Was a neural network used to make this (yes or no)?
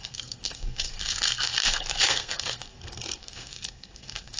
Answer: yes